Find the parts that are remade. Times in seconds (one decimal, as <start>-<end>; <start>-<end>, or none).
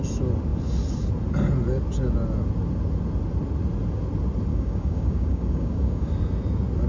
4.5-6.1